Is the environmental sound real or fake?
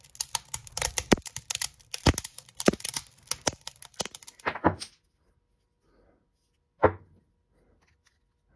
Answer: real